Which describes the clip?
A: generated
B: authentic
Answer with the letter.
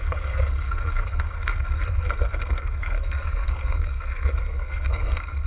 A